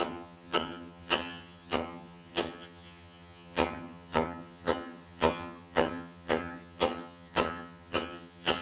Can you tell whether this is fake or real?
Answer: fake